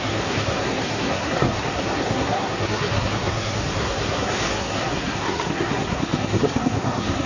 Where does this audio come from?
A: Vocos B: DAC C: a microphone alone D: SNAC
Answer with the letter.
D